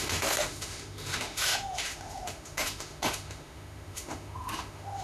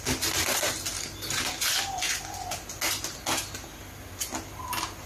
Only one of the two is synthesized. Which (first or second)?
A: first